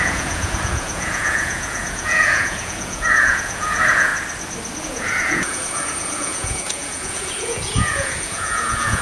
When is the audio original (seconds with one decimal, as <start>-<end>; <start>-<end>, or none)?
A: 4.1-4.8